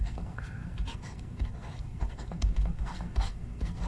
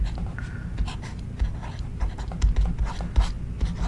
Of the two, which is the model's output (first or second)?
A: first